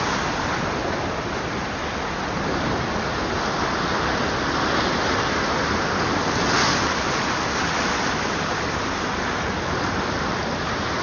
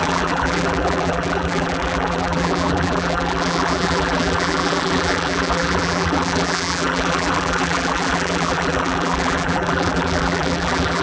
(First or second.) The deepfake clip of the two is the second